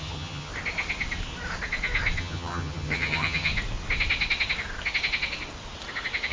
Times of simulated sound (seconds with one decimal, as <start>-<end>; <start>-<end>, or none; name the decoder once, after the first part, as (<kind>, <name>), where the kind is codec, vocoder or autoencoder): 0.0-0.5 (vocoder, HiFi-GAN); 2.2-3.5